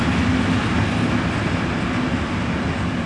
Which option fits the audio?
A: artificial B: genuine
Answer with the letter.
B